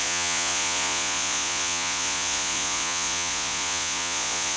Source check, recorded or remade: remade